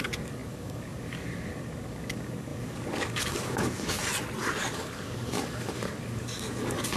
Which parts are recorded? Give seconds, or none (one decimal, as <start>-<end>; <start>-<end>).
4.0-4.7